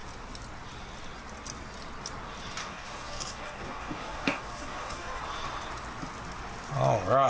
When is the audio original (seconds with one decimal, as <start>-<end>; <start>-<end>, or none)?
0.0-2.6; 5.2-7.3